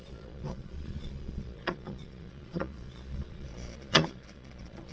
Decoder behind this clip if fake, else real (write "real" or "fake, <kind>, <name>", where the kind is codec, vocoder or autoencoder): fake, vocoder, Vocos